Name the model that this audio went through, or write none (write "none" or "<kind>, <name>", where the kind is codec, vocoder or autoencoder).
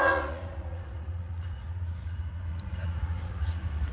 vocoder, Vocos